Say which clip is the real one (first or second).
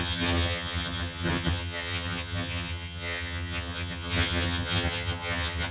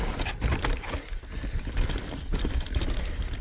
second